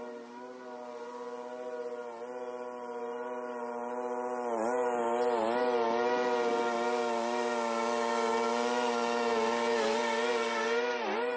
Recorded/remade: recorded